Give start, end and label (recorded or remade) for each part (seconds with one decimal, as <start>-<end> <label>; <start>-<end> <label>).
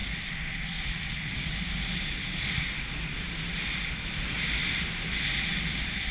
0.0-6.1 recorded